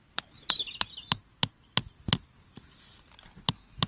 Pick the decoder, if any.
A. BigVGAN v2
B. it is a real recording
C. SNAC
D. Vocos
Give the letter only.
B